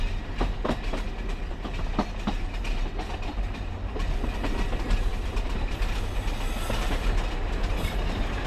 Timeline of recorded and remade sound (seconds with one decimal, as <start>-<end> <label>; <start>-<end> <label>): 0.0-8.5 recorded